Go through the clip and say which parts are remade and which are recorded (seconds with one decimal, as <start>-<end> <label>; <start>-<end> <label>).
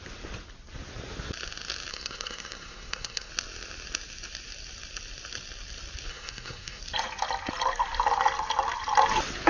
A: 0.0-1.9 recorded; 1.9-3.3 remade; 3.3-6.1 recorded; 6.1-6.8 remade; 6.8-9.5 recorded